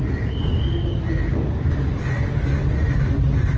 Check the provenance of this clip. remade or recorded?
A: recorded